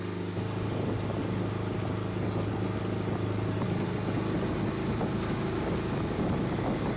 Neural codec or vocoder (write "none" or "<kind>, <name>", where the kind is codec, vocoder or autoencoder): none